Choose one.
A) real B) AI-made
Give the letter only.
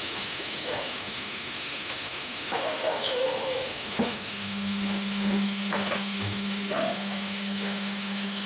B